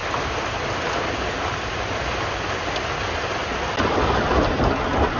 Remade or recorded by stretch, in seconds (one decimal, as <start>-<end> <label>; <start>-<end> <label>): 0.0-5.2 recorded